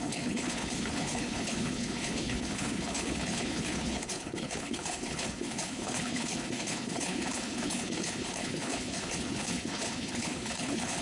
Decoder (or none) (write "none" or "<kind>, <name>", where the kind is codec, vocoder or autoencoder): codec, HILCodec